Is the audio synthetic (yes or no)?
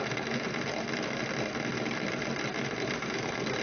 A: no